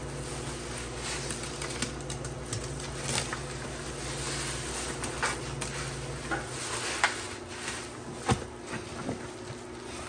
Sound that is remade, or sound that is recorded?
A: recorded